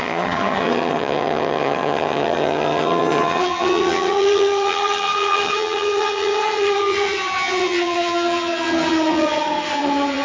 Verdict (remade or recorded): remade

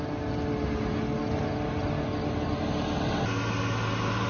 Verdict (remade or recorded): recorded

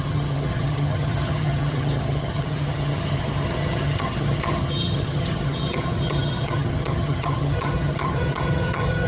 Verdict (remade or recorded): remade